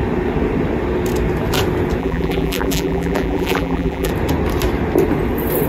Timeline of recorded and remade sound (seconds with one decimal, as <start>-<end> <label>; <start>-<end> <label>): 0.0-2.0 recorded; 2.0-4.1 remade; 4.1-5.7 recorded